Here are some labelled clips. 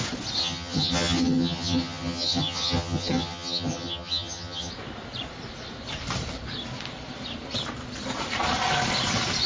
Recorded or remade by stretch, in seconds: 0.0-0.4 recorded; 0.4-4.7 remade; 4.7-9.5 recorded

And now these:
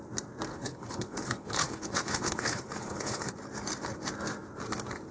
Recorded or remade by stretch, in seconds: 0.0-0.5 recorded; 0.5-3.3 remade; 3.3-5.1 recorded

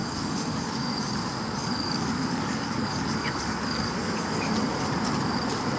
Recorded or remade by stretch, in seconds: 0.0-0.9 remade; 0.9-1.6 recorded; 1.6-4.5 remade; 4.5-5.8 recorded

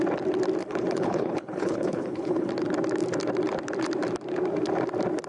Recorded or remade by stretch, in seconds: 0.0-0.6 recorded; 0.6-2.5 remade; 2.5-5.3 recorded

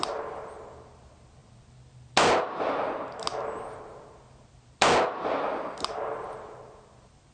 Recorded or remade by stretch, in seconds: 0.0-7.3 recorded

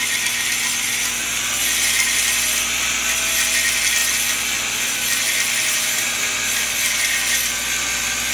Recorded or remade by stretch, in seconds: 0.0-8.3 recorded

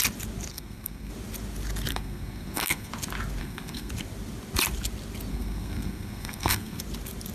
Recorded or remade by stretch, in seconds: 0.0-0.5 recorded; 0.5-1.1 remade; 1.1-1.9 recorded; 1.9-2.9 remade; 2.9-3.4 recorded; 3.4-3.9 remade; 3.9-5.3 recorded; 5.3-6.8 remade; 6.8-7.3 recorded

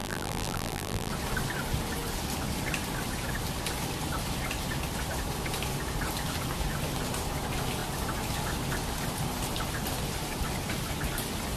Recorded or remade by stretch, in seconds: 0.0-1.1 remade; 1.1-11.6 recorded